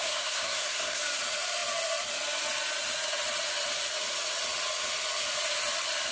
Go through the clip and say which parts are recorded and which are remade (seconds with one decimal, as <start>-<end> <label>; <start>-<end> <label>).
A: 0.0-1.0 remade; 1.0-6.1 recorded